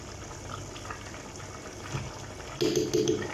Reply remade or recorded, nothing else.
recorded